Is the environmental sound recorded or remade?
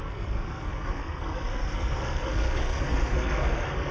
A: remade